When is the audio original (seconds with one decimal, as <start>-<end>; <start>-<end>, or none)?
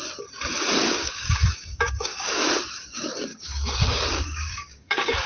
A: 0.0-0.8; 2.5-3.3